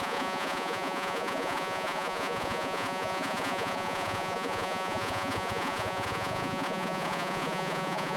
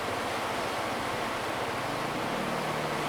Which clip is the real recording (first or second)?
second